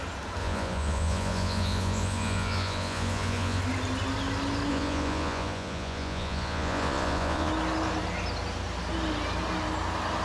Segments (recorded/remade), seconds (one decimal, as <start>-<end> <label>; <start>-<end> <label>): 0.0-0.4 recorded; 0.4-3.6 remade; 3.6-4.7 recorded; 4.7-7.5 remade; 7.5-10.2 recorded